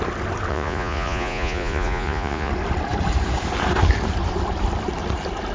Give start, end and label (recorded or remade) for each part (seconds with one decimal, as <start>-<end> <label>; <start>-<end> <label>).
0.0-0.5 recorded; 0.5-2.5 remade; 2.5-5.5 recorded